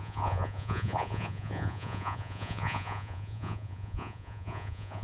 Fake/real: fake